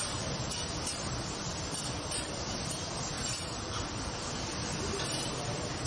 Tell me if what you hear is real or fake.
fake